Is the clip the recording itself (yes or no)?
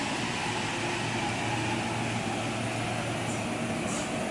yes